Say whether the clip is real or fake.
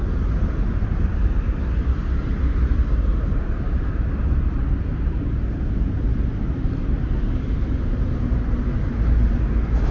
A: fake